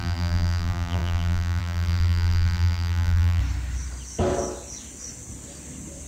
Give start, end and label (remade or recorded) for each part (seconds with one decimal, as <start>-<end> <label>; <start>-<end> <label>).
0.0-3.4 remade; 3.4-6.1 recorded